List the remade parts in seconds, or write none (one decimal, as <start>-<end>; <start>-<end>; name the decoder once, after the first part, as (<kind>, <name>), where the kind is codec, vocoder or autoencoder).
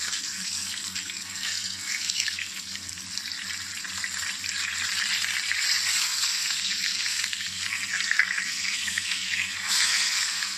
0.0-2.9 (codec, SNAC); 6.0-10.6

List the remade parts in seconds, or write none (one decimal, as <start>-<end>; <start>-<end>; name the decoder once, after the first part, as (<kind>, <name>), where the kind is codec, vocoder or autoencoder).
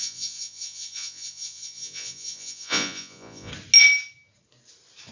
0.0-3.5 (vocoder, Vocos)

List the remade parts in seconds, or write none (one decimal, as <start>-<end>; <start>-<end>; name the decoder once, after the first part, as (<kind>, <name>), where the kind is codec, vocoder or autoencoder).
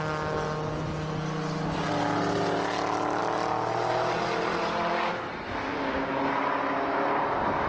5.7-6.3 (codec, DAC)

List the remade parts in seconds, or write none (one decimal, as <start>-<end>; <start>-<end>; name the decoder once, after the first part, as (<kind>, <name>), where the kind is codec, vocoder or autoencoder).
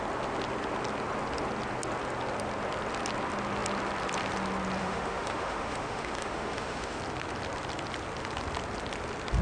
4.8-7.0 (autoencoder, DAC-VAE)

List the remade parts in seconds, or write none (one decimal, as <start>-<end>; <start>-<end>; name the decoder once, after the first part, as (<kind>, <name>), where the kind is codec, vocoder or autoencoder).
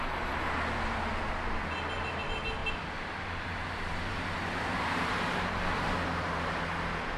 2.6-5.9 (vocoder, BigVGAN v2)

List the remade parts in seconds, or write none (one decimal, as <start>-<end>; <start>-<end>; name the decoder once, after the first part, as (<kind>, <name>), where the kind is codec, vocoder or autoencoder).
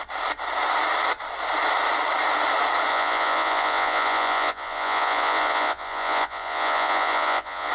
2.9-7.7 (vocoder, Vocos)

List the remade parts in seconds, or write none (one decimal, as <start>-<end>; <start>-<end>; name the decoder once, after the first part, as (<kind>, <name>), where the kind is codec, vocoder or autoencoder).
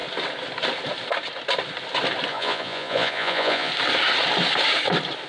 2.3-3.7 (vocoder, Vocos)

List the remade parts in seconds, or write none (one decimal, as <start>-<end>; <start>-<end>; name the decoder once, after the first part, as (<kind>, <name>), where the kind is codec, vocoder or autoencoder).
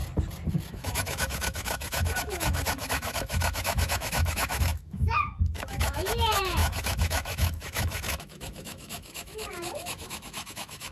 0.7-10.9 (autoencoder, DAC-VAE)